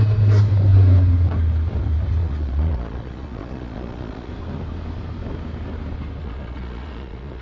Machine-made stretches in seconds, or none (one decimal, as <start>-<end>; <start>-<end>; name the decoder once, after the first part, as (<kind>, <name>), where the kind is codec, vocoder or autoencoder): 2.2-4.3 (vocoder, Vocos); 6.2-7.4